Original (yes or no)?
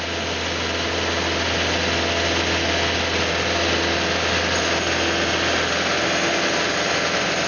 yes